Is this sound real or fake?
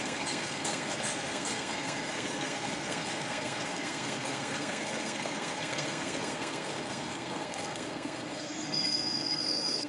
fake